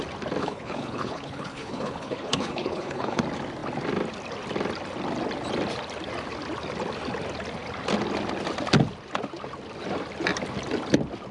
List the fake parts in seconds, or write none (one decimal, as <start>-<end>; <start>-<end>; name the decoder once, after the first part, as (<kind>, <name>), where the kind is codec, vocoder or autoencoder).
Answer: 0.4-3.2 (codec, HILCodec)